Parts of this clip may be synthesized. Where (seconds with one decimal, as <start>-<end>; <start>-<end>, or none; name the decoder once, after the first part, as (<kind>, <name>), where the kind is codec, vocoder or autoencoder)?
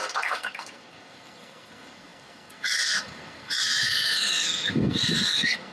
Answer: 0.0-5.7 (codec, SNAC)